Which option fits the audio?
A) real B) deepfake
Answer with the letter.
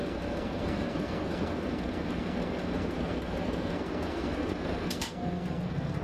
B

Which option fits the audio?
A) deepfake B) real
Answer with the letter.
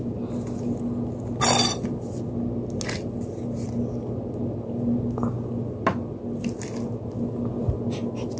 B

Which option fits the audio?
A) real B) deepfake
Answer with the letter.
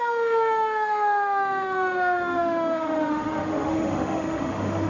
B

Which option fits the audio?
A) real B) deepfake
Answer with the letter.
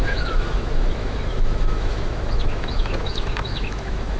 B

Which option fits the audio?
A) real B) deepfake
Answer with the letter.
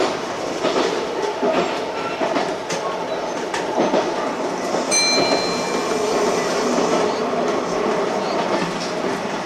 A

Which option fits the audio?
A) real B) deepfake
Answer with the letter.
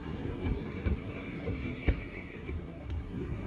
B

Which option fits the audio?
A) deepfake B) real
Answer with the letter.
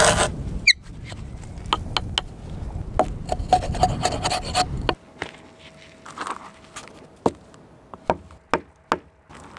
B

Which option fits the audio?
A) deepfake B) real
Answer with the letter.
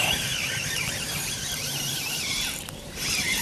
A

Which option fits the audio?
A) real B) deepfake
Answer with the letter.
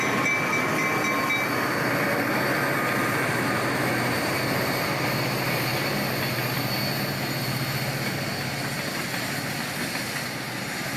A